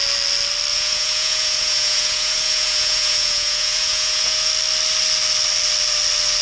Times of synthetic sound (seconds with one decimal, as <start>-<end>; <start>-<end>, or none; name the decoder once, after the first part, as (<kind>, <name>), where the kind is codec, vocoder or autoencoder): 0.7-4.5 (vocoder, Vocos)